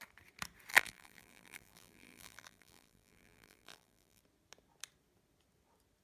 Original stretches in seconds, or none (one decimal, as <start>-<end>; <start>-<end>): 0.0-0.7; 4.2-6.0